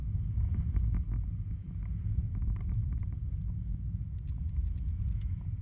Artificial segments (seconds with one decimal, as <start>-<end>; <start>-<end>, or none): none